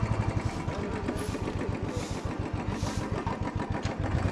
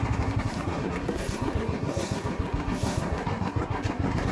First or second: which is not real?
second